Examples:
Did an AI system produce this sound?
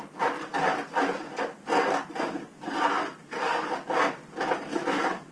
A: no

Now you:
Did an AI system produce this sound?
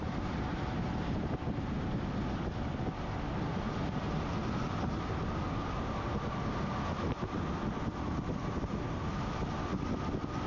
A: no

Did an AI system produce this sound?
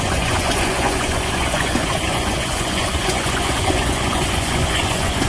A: yes